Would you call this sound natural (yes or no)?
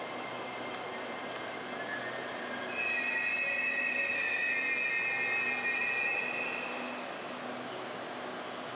yes